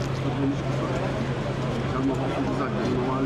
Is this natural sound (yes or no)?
yes